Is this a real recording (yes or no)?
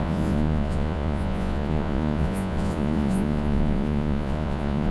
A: no